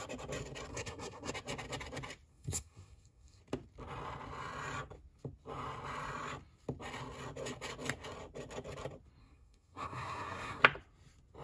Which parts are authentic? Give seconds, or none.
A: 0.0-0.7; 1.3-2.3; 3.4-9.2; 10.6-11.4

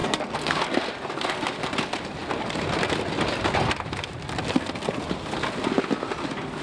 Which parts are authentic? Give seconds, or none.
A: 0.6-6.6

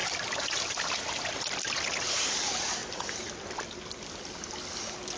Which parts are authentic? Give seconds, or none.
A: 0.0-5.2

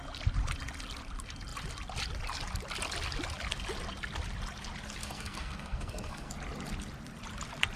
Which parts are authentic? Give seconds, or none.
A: 0.0-5.0; 6.3-7.8

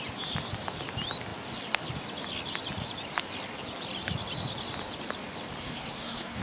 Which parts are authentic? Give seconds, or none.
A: 0.0-5.6

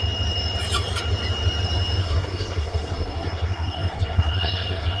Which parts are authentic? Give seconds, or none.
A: 0.0-2.0

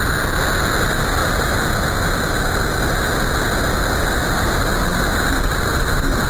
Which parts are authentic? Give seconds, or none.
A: 0.0-6.3

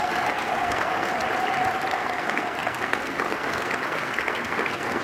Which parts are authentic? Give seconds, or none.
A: 1.1-1.9